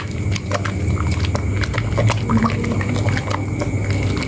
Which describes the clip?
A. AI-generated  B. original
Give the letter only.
B